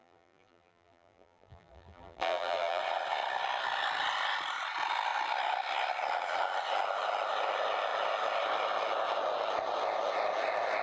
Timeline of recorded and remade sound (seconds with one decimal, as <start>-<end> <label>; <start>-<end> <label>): 0.0-2.8 remade; 2.8-10.8 recorded